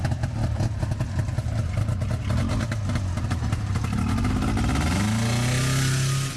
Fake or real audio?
real